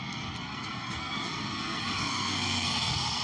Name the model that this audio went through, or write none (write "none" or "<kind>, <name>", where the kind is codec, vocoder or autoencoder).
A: codec, SNAC